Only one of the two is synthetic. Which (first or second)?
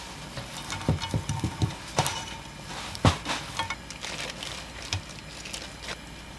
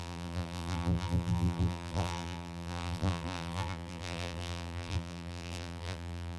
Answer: second